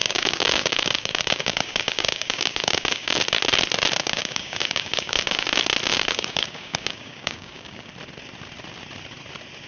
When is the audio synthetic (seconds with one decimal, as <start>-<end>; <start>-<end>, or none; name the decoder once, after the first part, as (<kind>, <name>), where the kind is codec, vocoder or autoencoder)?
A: 0.0-3.2 (codec, DAC); 4.0-5.5; 5.9-7.9